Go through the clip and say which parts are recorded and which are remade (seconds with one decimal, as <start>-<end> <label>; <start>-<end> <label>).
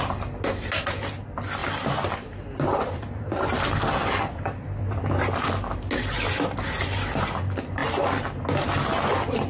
0.0-1.6 recorded; 1.6-5.1 remade; 5.1-9.5 recorded